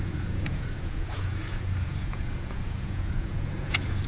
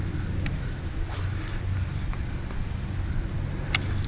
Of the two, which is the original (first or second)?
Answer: second